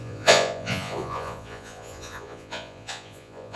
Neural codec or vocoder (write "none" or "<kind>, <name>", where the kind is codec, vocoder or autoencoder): vocoder, Vocos